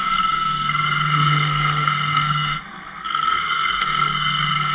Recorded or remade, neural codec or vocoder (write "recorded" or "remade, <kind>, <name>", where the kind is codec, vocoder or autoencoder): remade, codec, SNAC